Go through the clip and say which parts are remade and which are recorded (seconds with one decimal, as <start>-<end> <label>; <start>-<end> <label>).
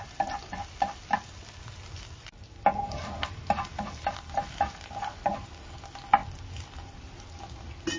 0.0-8.0 recorded